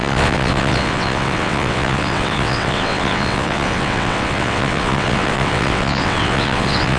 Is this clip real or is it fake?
fake